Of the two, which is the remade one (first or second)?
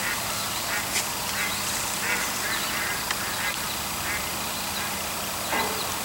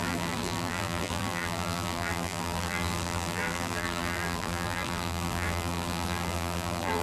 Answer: second